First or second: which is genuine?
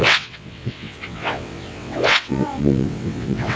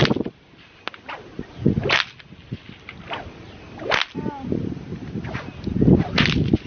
second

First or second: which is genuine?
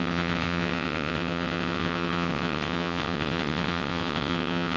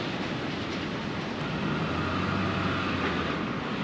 second